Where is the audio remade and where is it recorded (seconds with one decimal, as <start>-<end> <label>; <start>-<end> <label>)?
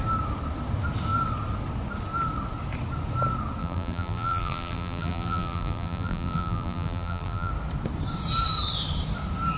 0.0-3.6 recorded; 3.6-7.5 remade; 7.5-9.6 recorded